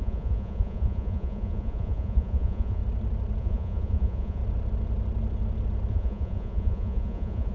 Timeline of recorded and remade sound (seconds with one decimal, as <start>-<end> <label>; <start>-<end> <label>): 0.0-2.8 remade; 2.8-3.4 recorded; 3.4-4.4 remade; 4.4-5.9 recorded; 5.9-7.5 remade